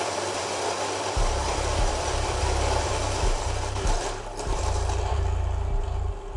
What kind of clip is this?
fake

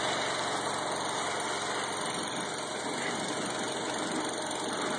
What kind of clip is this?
real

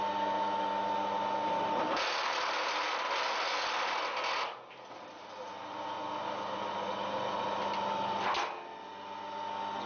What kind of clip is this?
real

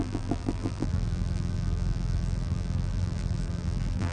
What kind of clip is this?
fake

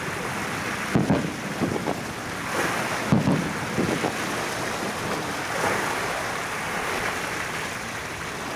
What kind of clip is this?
real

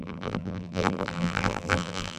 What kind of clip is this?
fake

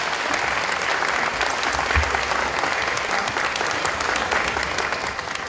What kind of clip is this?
real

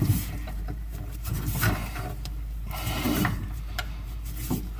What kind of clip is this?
fake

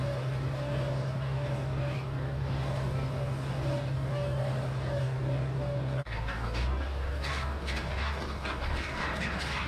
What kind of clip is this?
fake